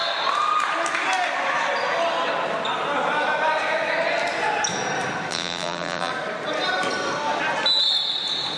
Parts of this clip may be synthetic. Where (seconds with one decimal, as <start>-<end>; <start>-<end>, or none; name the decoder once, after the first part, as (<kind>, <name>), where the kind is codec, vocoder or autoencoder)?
5.3-6.1 (vocoder, BigVGAN v2)